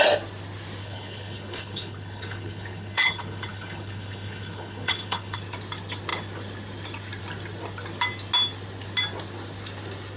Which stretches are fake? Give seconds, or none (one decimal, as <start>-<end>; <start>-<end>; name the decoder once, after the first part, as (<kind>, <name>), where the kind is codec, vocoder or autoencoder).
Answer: 0.8-5.4 (codec, HILCodec)